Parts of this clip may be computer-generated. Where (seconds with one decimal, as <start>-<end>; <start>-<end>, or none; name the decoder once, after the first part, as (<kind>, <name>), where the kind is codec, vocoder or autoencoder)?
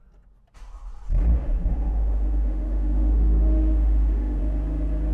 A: 1.3-4.4 (autoencoder, DAC-VAE)